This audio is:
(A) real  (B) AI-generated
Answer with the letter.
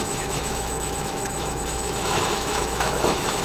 B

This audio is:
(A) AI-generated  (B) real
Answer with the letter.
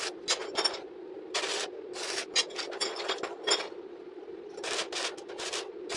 B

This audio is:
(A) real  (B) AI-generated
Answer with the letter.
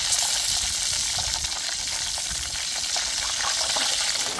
A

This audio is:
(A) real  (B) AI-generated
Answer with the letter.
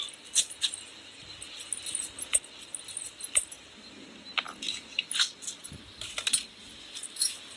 A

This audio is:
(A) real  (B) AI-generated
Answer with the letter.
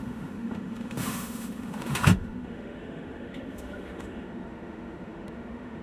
B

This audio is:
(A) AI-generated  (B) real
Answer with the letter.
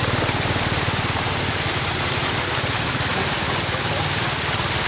B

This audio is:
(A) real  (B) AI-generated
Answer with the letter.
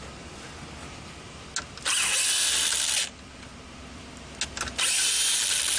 A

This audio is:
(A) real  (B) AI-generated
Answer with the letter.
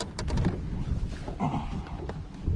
A